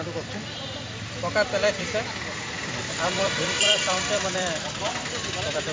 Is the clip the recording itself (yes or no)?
no